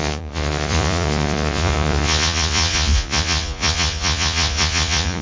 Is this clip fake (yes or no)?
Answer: yes